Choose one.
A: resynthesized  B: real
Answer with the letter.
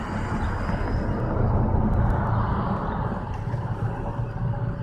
B